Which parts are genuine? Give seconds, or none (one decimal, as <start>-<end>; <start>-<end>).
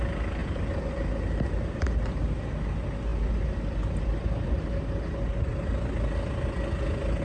0.0-7.2